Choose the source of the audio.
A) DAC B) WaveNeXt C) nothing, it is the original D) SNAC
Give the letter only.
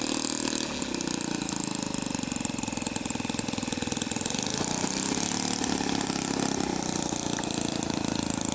C